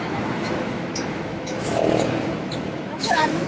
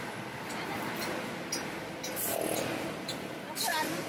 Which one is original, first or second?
second